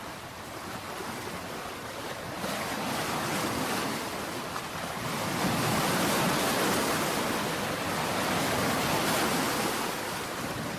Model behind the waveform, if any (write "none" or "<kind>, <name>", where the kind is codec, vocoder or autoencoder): none